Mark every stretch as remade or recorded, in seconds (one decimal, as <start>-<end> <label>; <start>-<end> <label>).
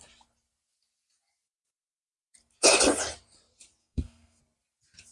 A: 0.0-3.8 recorded; 3.8-4.4 remade; 4.4-5.1 recorded